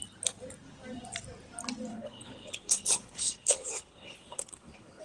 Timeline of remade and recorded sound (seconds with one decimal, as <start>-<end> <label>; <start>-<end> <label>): 0.0-1.9 recorded; 1.9-5.0 remade